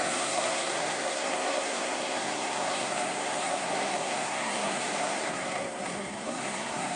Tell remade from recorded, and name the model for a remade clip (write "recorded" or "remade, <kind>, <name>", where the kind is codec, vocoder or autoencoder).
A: remade, codec, SNAC